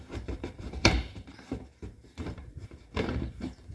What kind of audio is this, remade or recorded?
remade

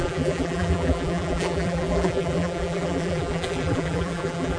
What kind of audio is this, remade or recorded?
remade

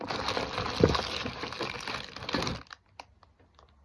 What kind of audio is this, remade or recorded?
recorded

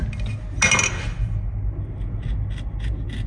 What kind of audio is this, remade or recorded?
recorded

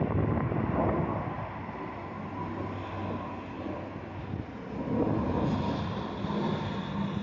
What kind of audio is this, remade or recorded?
recorded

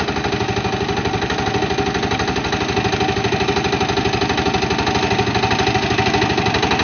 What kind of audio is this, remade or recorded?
recorded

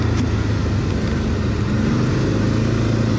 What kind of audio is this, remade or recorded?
recorded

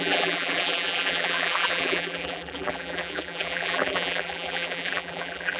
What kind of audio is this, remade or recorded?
remade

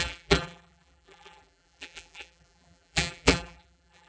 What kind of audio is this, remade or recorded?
remade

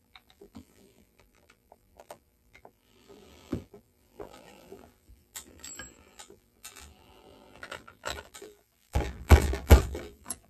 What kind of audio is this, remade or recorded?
remade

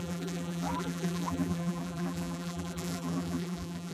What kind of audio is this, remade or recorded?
remade